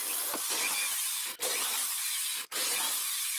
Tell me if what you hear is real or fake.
real